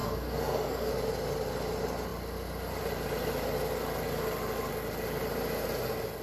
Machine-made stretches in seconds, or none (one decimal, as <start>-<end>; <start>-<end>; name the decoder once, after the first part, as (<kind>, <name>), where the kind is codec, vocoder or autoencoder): 0.0-0.9 (codec, SNAC)